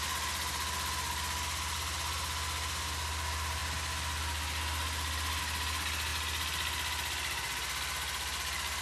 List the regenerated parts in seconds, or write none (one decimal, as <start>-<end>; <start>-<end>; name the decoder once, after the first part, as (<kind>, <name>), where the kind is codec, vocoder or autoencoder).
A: none